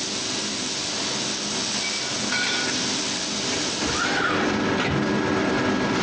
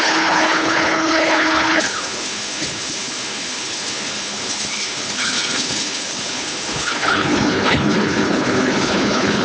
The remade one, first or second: second